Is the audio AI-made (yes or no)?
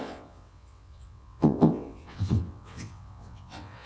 yes